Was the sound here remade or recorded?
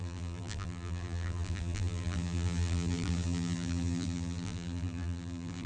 remade